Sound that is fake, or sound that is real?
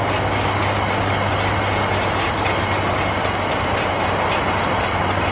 real